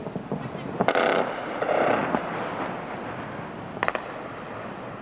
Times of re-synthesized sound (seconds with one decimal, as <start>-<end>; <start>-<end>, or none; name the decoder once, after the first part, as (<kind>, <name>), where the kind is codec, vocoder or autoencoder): 0.5-2.0 (vocoder, BigVGAN v2); 4.0-5.0

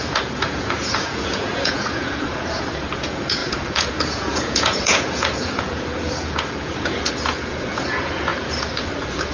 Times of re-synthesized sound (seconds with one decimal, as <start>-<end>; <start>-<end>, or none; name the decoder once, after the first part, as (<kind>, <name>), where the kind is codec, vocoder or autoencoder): 0.0-9.3 (vocoder, Vocos)

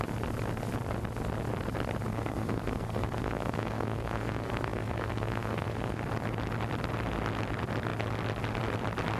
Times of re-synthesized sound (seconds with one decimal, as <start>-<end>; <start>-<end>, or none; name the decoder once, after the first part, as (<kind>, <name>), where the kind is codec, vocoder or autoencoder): 2.1-6.0 (codec, SNAC)

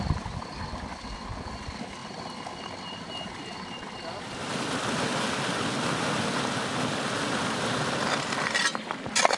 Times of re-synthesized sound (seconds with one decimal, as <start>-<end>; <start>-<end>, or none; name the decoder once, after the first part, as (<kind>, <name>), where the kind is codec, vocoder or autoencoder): none